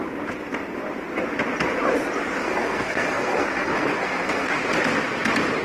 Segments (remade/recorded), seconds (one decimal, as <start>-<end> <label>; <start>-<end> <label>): 0.0-2.4 recorded; 2.4-4.5 remade; 4.5-5.6 recorded